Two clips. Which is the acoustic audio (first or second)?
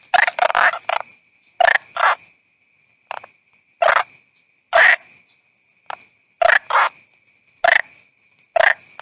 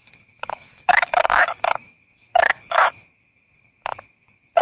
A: first